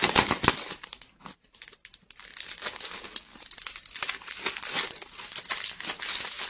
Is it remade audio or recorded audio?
recorded